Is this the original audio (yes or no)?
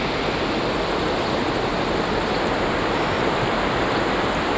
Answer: yes